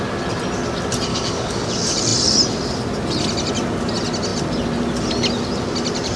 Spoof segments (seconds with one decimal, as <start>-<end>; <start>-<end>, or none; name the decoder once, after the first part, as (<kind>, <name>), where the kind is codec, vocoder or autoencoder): 1.1-1.7 (codec, DAC)

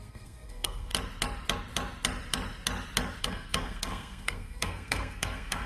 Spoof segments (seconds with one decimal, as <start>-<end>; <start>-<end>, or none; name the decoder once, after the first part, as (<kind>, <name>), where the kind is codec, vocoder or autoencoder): 0.0-0.9 (codec, SNAC); 3.2-5.7

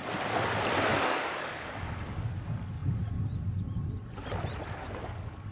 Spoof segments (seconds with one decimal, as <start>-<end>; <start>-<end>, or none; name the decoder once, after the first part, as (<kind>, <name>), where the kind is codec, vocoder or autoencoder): 0.9-2.3 (codec, DAC); 4.8-5.5

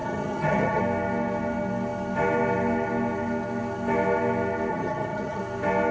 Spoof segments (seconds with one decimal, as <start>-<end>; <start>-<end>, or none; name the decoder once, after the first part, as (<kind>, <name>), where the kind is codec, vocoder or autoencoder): 0.0-0.8 (vocoder, HiFi-GAN); 4.7-5.4